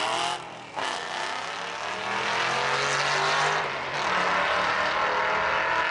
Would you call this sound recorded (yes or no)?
yes